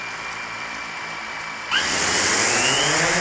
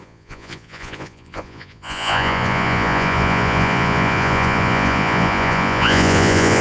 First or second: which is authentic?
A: first